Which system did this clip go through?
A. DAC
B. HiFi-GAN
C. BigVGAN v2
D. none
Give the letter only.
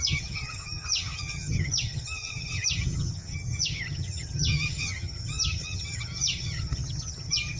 B